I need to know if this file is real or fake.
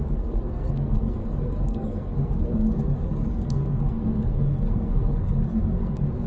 fake